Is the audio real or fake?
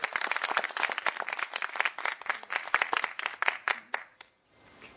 real